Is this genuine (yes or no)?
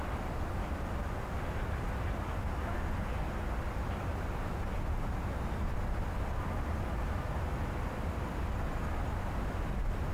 yes